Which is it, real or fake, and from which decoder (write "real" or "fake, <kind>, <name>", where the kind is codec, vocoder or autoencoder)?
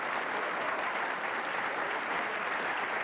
real